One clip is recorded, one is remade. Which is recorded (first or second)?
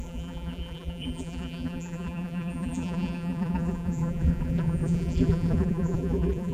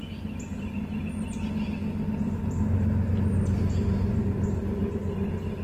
second